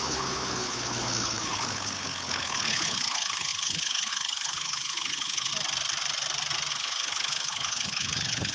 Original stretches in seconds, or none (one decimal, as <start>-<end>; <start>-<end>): 5.5-6.7